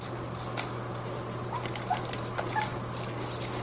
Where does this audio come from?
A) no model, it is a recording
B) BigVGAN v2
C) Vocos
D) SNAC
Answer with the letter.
A